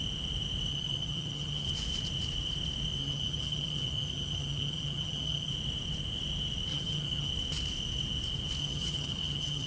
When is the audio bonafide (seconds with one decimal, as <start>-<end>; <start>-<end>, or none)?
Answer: 0.0-0.7; 1.7-3.0; 5.5-6.7; 7.3-8.6